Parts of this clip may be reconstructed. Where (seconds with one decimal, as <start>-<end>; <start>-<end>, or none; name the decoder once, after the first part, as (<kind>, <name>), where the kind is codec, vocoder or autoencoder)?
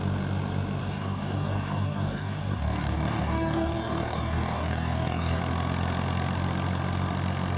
0.8-5.4 (codec, DAC)